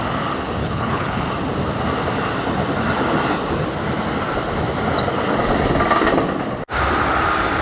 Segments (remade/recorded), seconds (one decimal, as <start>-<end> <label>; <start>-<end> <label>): 0.0-0.6 recorded; 0.6-1.3 remade; 1.3-7.6 recorded